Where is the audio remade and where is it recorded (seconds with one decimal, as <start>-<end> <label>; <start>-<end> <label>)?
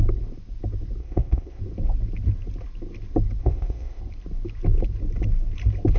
0.0-1.0 recorded; 1.0-1.6 remade; 1.6-3.4 recorded; 3.4-4.0 remade; 4.0-6.0 recorded